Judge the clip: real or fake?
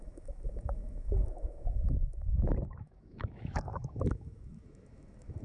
fake